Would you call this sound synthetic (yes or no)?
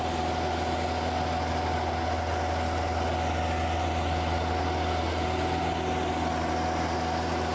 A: no